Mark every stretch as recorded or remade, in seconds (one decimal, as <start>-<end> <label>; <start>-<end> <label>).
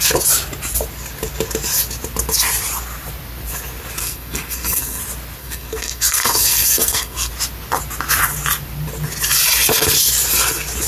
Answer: 0.0-4.0 recorded; 4.0-5.0 remade; 5.0-5.4 recorded; 5.4-7.3 remade; 7.3-10.9 recorded